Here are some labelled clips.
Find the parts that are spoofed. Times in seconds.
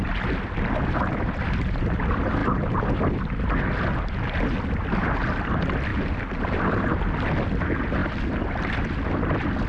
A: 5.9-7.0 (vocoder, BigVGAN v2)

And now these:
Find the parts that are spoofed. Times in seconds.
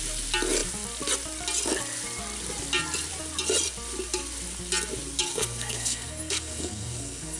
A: 5.3-7.4 (codec, SNAC)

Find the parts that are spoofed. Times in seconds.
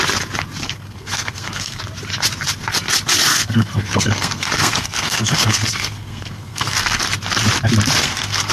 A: 0.6-1.8 (codec, SNAC); 3.3-7.0; 8.0-8.5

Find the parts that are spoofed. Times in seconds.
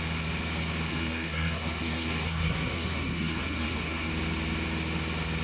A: 0.9-4.1 (codec, SNAC)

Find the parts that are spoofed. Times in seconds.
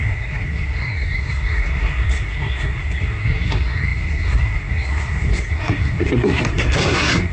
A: 0.0-7.3 (codec, SNAC)